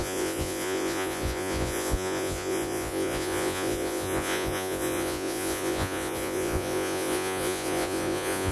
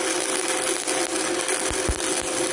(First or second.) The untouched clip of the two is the second